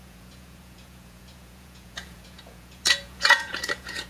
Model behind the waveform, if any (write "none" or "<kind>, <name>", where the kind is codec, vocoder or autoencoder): vocoder, Vocos